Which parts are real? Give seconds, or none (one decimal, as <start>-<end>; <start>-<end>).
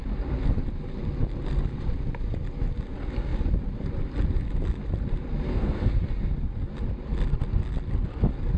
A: 0.0-5.5; 6.0-8.6